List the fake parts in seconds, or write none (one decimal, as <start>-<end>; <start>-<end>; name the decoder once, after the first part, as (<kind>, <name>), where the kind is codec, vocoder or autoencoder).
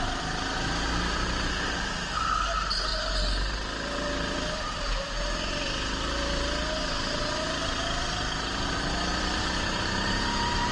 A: none